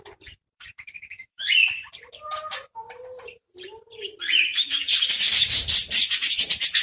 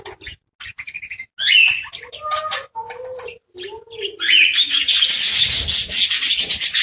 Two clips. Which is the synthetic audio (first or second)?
first